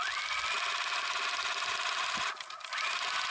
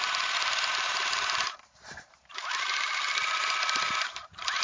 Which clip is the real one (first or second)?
first